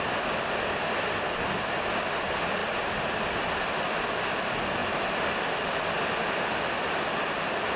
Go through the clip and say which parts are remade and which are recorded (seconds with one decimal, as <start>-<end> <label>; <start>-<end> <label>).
0.0-2.6 recorded; 2.6-3.4 remade; 3.4-4.8 recorded; 4.8-7.3 remade; 7.3-7.8 recorded